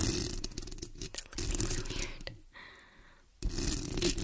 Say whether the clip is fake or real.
real